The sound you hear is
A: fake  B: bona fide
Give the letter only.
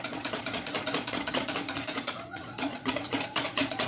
A